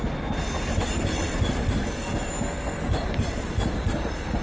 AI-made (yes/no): no